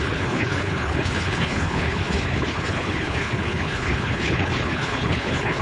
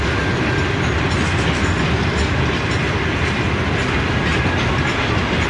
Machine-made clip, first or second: first